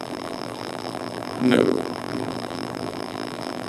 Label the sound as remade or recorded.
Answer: remade